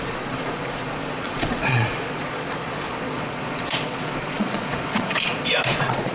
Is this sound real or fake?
fake